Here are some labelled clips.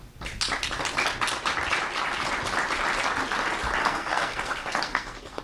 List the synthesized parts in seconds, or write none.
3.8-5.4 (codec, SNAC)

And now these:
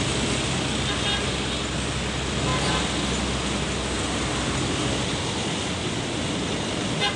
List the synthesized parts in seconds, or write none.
none

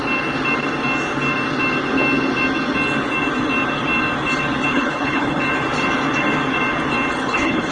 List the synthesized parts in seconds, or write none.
4.7-5.4 (codec, HILCodec); 7.2-7.7

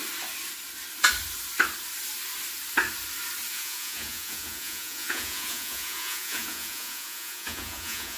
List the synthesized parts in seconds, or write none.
3.5-8.2 (vocoder, Vocos)

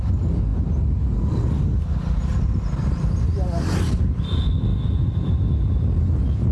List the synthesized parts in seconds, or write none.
none

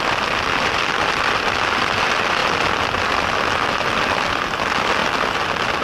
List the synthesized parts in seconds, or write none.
none

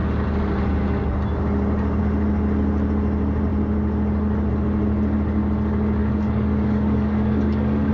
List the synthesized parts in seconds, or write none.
6.0-7.9 (codec, DAC)